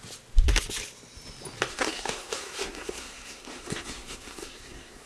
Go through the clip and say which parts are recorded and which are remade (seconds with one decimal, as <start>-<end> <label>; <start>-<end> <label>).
0.0-1.7 recorded; 1.7-5.1 remade

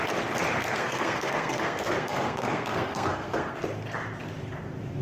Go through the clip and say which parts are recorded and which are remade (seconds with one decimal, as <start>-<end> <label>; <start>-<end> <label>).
0.0-0.6 recorded; 0.6-3.6 remade; 3.6-5.0 recorded

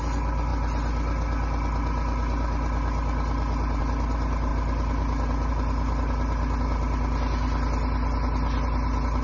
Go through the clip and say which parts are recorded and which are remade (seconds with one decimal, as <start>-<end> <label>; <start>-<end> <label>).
0.0-9.2 recorded

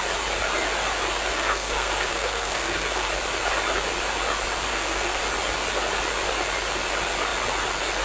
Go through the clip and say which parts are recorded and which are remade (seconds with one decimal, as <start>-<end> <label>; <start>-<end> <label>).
0.0-1.3 recorded; 1.3-3.1 remade; 3.1-4.7 recorded; 4.7-5.2 remade; 5.2-8.0 recorded

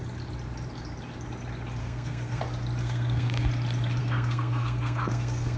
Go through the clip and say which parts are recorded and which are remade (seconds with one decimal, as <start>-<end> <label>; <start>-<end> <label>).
0.0-1.8 recorded; 1.8-2.4 remade; 2.4-2.8 recorded; 2.8-3.5 remade; 3.5-4.0 recorded; 4.0-5.6 remade

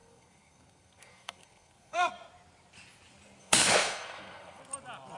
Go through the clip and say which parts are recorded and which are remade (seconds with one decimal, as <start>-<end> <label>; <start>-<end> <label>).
0.0-2.1 remade; 2.1-3.4 recorded; 3.4-4.6 remade; 4.6-5.2 recorded

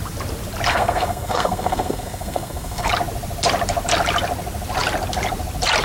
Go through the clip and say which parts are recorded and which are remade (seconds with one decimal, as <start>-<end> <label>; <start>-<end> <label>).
0.0-0.7 recorded; 0.7-2.9 remade; 2.9-5.8 recorded

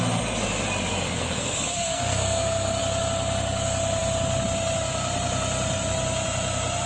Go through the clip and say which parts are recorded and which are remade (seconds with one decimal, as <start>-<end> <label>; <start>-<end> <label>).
0.0-0.9 recorded; 0.9-2.8 remade; 2.8-6.9 recorded